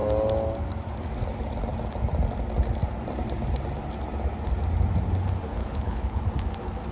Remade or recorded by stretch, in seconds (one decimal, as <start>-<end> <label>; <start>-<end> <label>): 0.0-5.6 recorded; 5.6-6.2 remade; 6.2-6.9 recorded